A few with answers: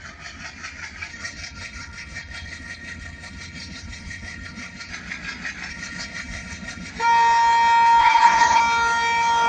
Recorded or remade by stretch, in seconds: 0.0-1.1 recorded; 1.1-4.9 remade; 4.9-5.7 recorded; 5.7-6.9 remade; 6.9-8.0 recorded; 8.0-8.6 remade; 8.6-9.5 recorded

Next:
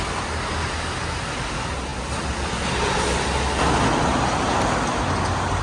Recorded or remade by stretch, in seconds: 0.0-5.6 recorded

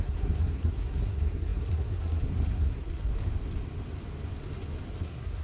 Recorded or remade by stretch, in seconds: 0.0-3.1 remade; 3.1-5.0 recorded; 5.0-5.4 remade

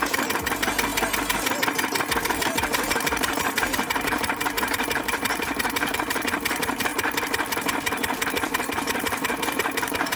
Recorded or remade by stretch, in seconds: 0.0-0.9 remade; 0.9-2.2 recorded; 2.2-6.9 remade; 6.9-8.3 recorded; 8.3-10.2 remade

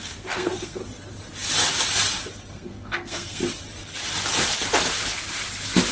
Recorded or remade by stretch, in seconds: 0.0-0.8 remade; 0.8-2.5 recorded; 2.5-3.4 remade; 3.4-5.9 recorded

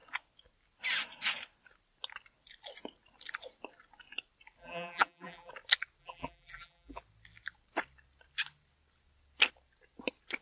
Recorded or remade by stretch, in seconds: 0.0-4.6 recorded; 4.6-5.5 remade; 5.5-6.0 recorded; 6.0-7.0 remade; 7.0-10.4 recorded

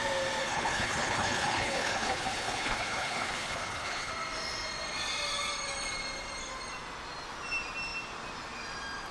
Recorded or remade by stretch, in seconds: 0.0-0.4 recorded; 0.4-4.1 remade; 4.1-9.1 recorded

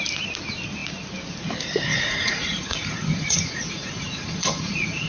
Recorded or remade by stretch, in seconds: 0.0-1.9 recorded; 1.9-5.1 remade